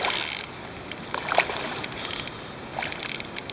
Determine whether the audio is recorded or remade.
recorded